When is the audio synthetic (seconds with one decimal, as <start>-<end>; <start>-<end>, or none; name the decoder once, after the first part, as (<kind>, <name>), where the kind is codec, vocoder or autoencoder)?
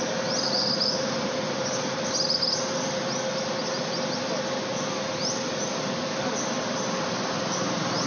none